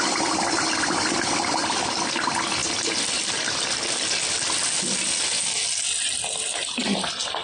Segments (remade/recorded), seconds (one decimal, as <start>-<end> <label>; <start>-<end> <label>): 0.0-7.4 recorded